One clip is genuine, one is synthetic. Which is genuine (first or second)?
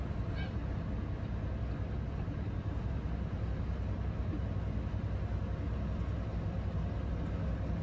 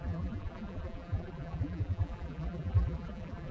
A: first